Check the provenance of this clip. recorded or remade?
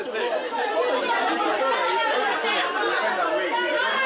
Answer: recorded